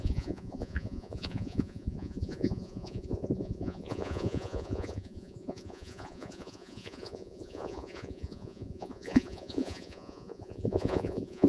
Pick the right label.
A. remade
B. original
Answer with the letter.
A